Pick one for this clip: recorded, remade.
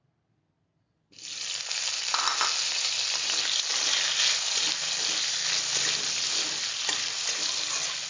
recorded